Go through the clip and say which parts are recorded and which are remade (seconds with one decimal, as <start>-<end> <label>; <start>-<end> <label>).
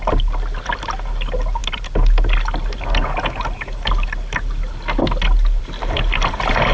0.0-6.7 recorded